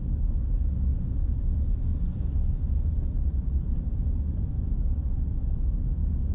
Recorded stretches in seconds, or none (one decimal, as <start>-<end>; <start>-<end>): 0.0-0.9; 4.5-6.3